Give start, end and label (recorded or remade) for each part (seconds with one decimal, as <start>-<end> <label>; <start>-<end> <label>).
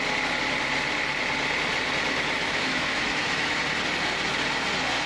0.0-2.4 recorded; 2.4-3.6 remade; 3.6-5.1 recorded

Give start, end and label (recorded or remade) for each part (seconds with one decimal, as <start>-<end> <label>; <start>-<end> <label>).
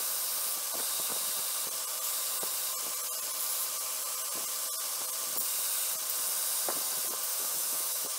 0.0-7.3 recorded; 7.3-8.2 remade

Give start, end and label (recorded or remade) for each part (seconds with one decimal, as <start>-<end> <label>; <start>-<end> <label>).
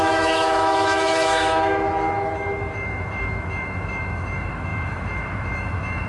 0.0-6.1 remade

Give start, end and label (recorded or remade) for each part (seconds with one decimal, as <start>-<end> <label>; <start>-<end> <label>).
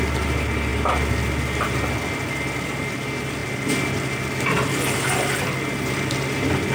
0.0-6.7 recorded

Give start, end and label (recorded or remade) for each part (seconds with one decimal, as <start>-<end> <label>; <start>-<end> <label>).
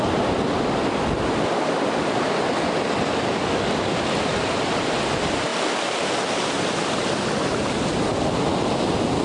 0.0-9.2 recorded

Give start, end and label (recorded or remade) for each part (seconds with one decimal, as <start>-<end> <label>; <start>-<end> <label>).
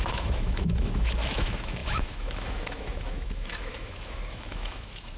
0.0-5.2 remade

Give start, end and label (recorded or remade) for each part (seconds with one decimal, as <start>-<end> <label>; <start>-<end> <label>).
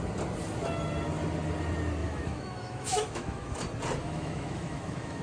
0.0-2.0 recorded; 2.0-3.6 remade; 3.6-4.0 recorded; 4.0-5.2 remade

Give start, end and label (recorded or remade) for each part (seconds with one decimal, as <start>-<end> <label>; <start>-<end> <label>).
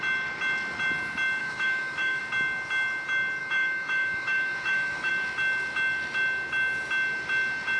0.0-1.4 recorded; 1.4-2.2 remade; 2.2-3.4 recorded; 3.4-5.1 remade; 5.1-7.8 recorded